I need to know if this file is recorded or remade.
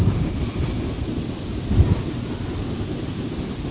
recorded